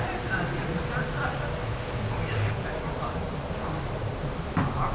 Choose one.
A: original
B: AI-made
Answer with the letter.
A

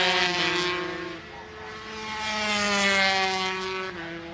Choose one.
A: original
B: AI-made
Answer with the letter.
A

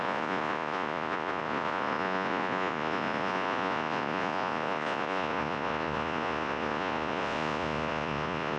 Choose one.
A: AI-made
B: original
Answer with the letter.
A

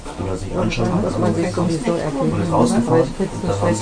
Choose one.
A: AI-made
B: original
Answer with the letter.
B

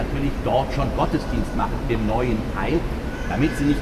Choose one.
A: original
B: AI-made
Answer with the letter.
A